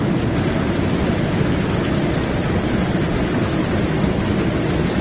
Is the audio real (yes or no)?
yes